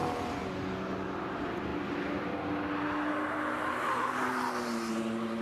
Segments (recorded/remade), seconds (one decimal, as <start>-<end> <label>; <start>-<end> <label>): 0.0-5.4 recorded